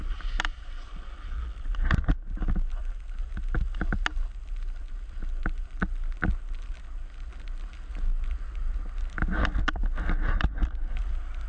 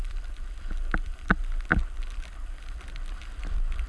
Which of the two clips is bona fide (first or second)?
first